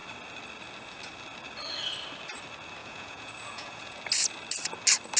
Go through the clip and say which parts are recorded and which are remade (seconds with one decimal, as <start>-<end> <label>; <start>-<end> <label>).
0.0-2.8 recorded; 2.8-4.0 remade; 4.0-5.2 recorded